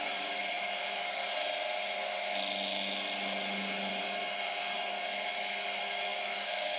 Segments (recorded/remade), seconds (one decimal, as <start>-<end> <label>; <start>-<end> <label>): 0.0-1.2 remade; 1.2-4.0 recorded; 4.0-6.8 remade